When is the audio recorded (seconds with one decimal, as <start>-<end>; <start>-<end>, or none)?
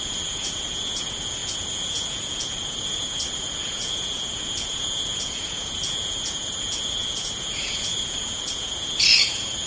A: none